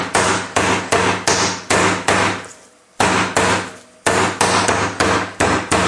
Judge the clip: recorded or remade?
recorded